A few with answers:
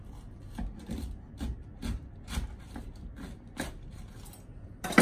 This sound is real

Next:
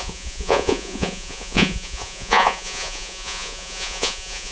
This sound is fake